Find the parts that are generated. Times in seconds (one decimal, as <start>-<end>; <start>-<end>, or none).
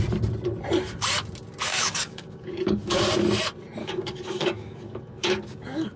1.7-3.0; 3.8-6.0